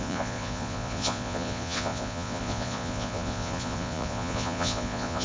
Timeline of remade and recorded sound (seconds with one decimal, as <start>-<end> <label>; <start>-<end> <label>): 0.0-5.2 remade